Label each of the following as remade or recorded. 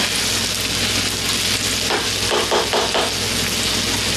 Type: recorded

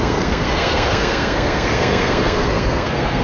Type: remade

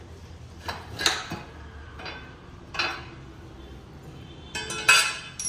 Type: recorded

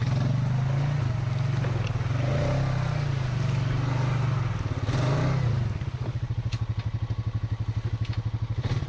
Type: recorded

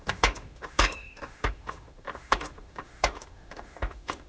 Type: remade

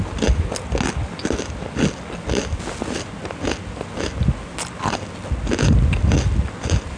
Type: recorded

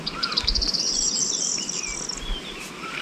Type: recorded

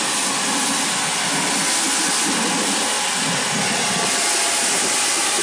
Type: recorded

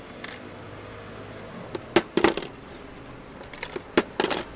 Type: recorded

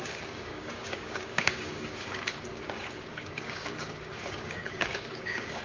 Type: remade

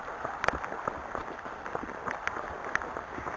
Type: recorded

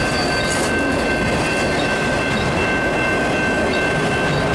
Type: recorded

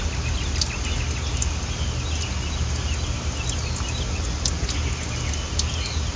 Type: recorded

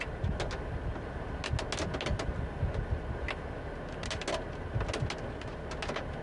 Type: recorded